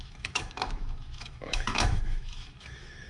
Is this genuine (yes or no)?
no